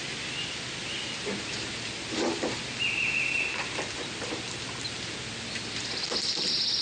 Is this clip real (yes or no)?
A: yes